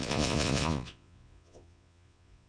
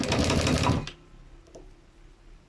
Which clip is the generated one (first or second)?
first